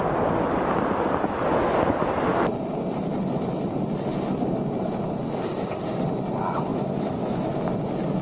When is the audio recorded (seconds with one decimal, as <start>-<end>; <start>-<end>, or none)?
0.0-6.7; 7.5-8.2